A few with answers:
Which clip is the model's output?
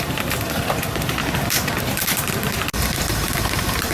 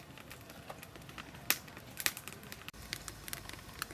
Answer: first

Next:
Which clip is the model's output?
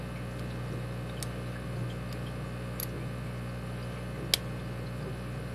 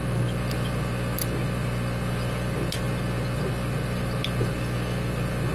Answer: second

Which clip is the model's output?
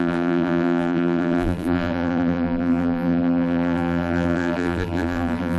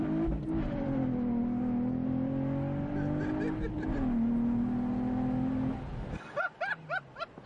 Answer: first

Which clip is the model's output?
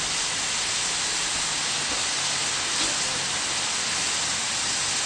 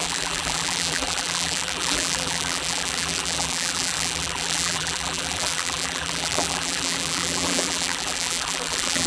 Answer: second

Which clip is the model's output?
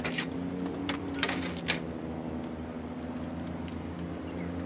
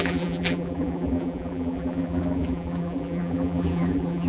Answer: second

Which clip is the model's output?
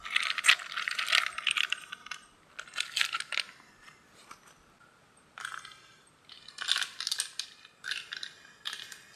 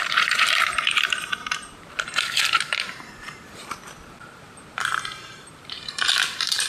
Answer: second